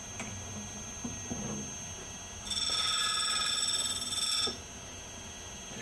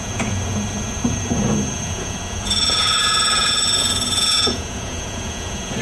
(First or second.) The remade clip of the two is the second